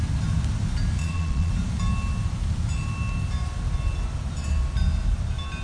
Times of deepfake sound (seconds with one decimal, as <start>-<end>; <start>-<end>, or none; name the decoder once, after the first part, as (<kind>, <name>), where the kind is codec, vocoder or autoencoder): 1.0-1.5 (vocoder, Vocos)